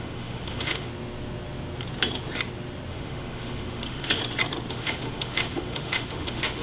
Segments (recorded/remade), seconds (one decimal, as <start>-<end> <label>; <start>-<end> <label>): 0.0-0.9 remade; 0.9-2.9 recorded; 2.9-4.2 remade; 4.2-4.7 recorded; 4.7-6.6 remade